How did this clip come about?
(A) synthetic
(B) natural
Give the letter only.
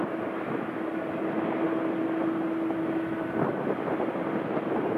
B